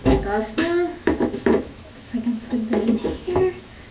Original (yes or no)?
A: no